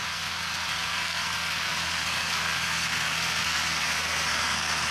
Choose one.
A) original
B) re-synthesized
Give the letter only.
B